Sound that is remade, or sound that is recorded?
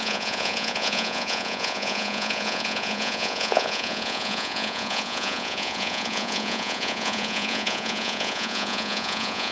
remade